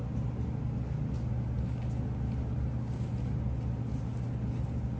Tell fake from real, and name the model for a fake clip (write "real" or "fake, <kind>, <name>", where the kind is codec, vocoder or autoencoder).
real